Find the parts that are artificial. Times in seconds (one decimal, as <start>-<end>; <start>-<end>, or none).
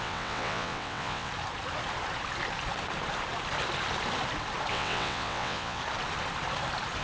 0.0-1.3; 4.7-5.8